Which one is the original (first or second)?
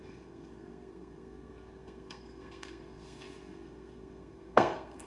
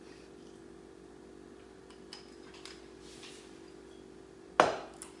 second